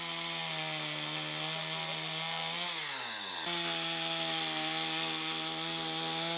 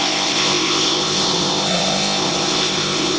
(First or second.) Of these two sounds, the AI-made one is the second